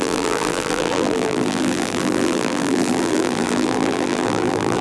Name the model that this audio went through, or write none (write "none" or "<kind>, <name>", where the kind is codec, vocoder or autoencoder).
vocoder, BigVGAN v2